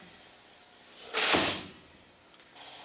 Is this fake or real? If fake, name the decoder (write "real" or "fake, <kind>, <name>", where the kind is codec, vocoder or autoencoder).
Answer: real